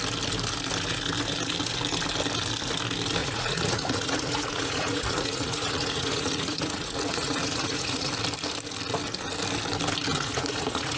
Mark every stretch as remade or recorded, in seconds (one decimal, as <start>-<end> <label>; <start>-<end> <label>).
0.0-3.2 recorded; 3.2-8.1 remade; 8.1-10.1 recorded; 10.1-11.0 remade